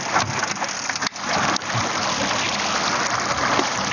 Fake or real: real